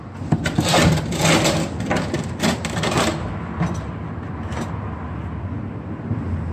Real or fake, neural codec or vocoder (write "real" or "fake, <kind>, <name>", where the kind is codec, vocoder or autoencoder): real